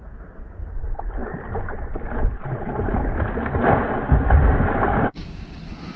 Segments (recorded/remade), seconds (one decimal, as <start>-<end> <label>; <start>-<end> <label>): 0.0-4.9 recorded; 4.9-5.6 remade; 5.6-6.0 recorded